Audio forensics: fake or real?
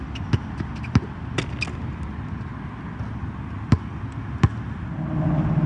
real